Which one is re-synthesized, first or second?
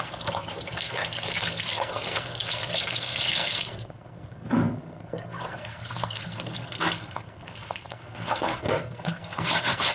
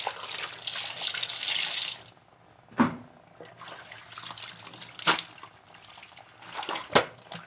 first